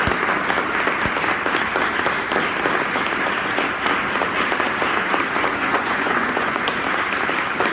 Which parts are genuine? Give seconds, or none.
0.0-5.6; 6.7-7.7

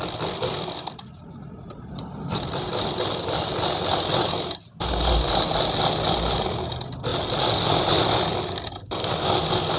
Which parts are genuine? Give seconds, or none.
0.0-9.8

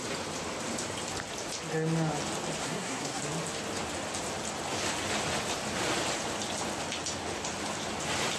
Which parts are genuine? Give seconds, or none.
0.0-2.6; 3.2-8.4